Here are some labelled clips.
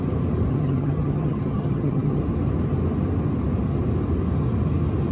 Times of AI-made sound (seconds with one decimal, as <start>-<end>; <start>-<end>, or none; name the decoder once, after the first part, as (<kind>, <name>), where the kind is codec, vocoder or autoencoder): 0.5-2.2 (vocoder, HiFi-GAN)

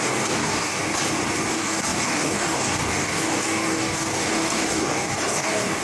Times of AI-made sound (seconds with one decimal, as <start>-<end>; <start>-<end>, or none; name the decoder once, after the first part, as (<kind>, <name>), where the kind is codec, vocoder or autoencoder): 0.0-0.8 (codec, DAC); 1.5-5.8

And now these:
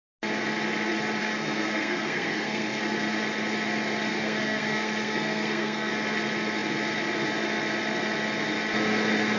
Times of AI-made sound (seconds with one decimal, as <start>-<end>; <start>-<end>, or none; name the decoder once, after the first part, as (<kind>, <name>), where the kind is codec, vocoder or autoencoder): 1.2-2.8 (codec, SNAC); 4.1-5.9

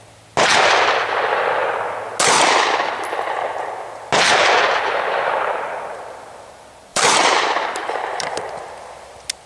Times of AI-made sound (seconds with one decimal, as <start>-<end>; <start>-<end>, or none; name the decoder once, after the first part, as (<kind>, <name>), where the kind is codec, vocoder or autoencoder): 6.9-8.5 (vocoder, BigVGAN v2)